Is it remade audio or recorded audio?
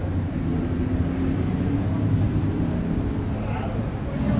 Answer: recorded